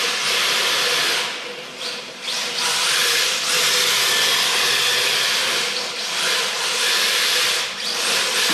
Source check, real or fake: real